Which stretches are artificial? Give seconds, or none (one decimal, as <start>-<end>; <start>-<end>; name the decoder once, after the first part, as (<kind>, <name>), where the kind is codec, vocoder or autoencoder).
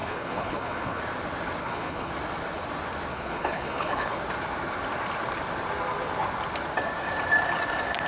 0.0-1.0 (codec, HILCodec); 1.6-2.1; 3.1-4.2